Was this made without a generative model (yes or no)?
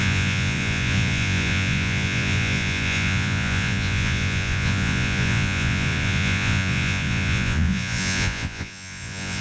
no